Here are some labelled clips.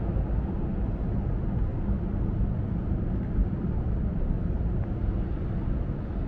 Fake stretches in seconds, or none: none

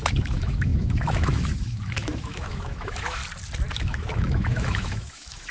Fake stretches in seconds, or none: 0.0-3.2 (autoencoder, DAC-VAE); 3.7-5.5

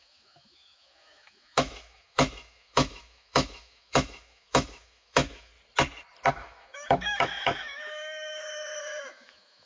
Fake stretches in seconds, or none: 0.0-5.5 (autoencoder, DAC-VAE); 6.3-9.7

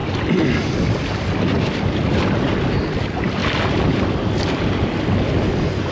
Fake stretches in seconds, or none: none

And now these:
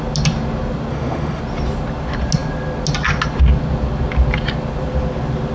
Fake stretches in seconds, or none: 0.9-1.4 (autoencoder, DAC-VAE)

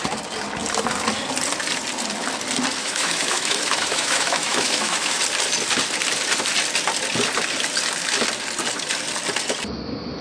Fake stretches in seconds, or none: 2.8-5.2 (autoencoder, DAC-VAE)